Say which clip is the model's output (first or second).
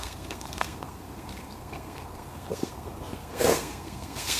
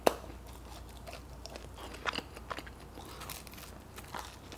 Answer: first